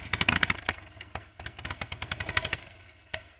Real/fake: fake